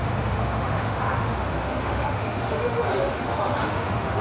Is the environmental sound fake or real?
fake